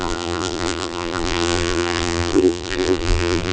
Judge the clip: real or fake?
fake